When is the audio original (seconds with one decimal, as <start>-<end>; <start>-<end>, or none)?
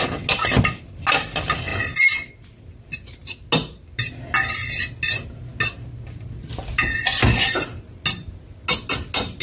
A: 0.0-9.4